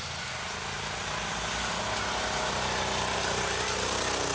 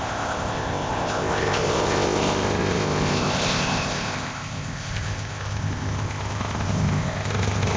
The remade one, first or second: second